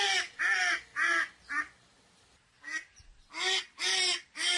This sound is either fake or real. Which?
real